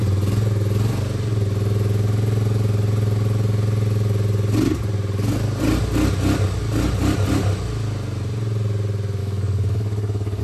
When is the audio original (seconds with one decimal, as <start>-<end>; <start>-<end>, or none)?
0.0-9.2